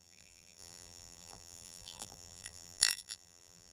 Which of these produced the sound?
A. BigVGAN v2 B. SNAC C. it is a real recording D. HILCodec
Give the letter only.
A